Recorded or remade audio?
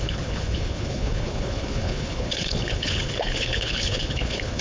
remade